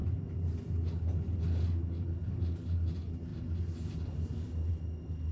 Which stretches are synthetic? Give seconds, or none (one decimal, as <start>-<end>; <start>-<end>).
none